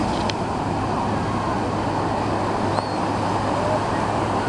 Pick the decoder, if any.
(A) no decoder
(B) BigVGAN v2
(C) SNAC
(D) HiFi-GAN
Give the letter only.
A